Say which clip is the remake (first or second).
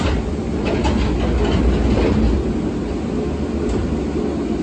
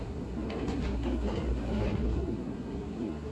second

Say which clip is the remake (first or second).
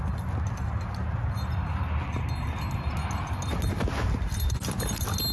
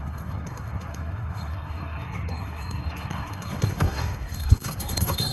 second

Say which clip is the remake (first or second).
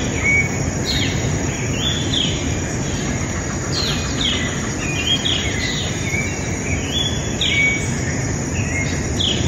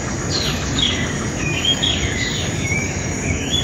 second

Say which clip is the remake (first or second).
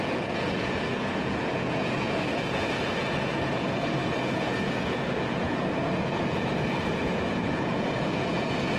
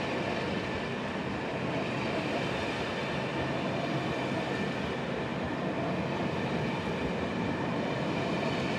first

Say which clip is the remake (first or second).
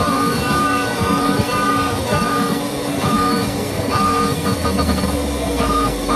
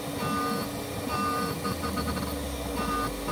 first